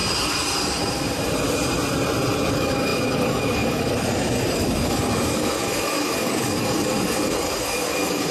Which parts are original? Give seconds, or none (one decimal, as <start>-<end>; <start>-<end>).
0.0-2.5